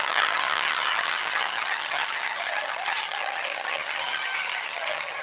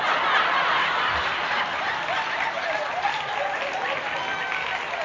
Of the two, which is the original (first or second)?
second